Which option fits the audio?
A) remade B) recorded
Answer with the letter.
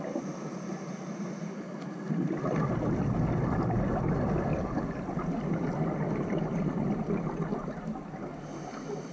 B